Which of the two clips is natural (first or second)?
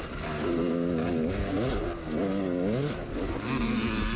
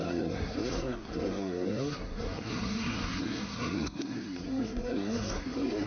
first